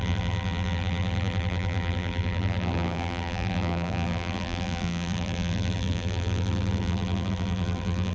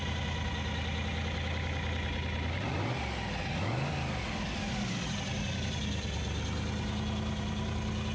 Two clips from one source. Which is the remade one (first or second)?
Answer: first